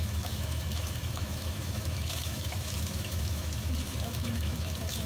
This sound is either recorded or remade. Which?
remade